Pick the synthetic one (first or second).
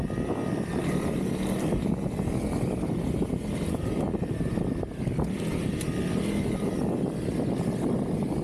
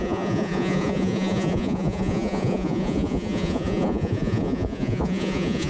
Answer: second